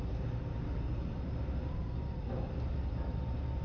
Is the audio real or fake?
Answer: real